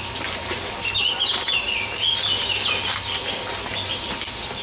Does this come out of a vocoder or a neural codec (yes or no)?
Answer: no